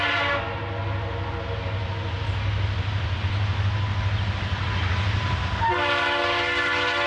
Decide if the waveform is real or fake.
real